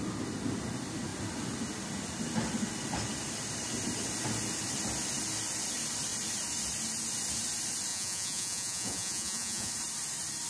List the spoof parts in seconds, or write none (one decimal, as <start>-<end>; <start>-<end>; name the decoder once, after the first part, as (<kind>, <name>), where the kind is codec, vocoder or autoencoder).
7.9-9.7 (vocoder, Vocos)